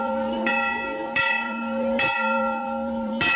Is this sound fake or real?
fake